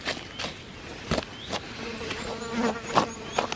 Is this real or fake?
real